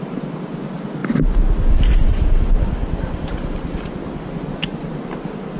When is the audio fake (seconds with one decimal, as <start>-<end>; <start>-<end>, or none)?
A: 1.0-4.4